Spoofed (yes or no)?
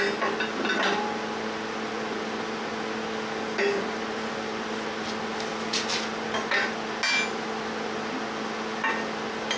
no